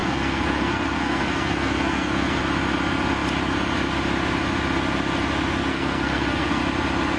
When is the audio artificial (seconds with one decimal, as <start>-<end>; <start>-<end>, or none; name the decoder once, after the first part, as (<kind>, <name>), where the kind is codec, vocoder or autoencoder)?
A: 0.0-2.4 (codec, SNAC); 5.7-6.6